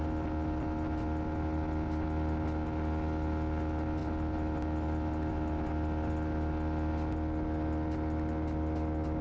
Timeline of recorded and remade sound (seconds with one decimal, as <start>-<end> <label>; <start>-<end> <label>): 0.0-9.2 recorded